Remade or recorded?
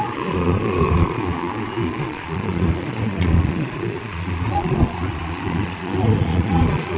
remade